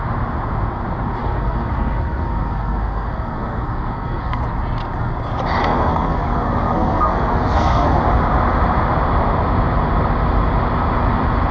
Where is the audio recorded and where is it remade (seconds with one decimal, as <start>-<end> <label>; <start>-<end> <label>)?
0.0-1.2 recorded; 1.2-4.4 remade; 4.4-5.6 recorded; 5.6-8.0 remade; 8.0-11.5 recorded